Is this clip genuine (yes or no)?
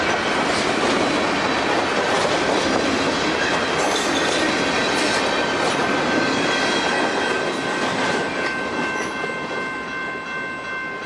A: yes